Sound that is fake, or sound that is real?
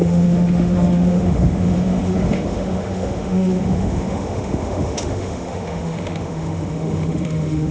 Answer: fake